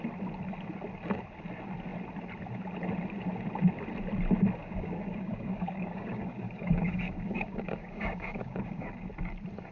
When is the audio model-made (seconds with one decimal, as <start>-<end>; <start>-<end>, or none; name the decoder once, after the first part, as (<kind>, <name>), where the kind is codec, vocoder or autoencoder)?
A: 4.6-9.1 (codec, DAC)